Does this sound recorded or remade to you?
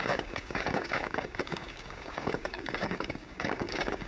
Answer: remade